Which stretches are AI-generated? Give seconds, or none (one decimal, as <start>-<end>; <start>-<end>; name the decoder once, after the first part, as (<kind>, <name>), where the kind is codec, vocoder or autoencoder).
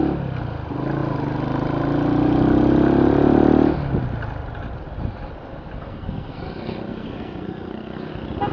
5.8-8.1 (codec, SNAC)